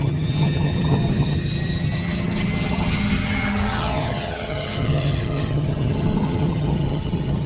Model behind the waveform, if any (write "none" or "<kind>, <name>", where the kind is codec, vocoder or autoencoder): vocoder, HiFi-GAN